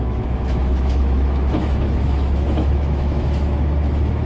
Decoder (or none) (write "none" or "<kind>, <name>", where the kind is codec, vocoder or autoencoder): autoencoder, DAC-VAE